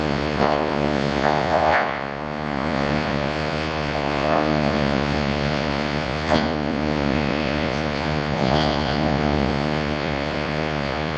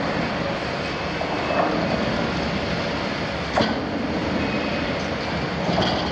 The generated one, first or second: first